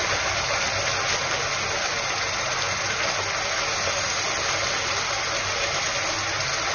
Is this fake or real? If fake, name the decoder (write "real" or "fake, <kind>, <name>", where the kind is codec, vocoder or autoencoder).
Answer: real